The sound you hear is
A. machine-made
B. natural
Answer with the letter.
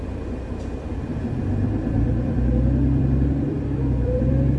A